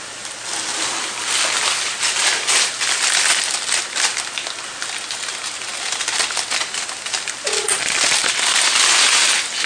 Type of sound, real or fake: real